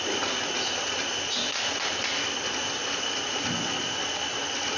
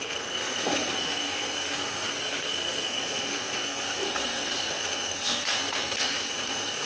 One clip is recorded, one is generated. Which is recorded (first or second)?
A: first